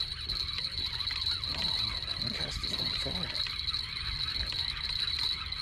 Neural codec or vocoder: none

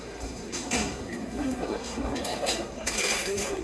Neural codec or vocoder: codec, SNAC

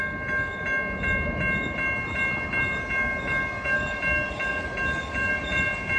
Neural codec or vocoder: none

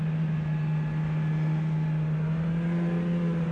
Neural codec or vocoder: none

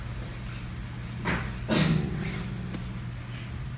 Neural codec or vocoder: none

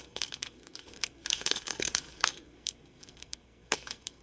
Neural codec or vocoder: codec, SNAC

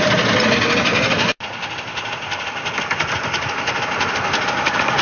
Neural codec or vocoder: none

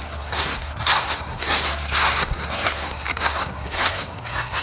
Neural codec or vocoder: codec, SNAC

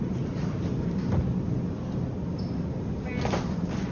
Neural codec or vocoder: none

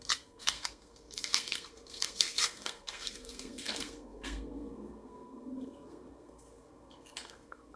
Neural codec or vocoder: codec, SNAC